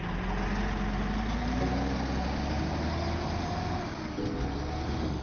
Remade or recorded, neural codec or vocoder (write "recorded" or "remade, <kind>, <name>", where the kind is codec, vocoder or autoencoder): recorded